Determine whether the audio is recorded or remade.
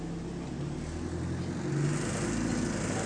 recorded